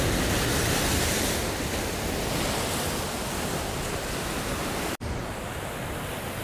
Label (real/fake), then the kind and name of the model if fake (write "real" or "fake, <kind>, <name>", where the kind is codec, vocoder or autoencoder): real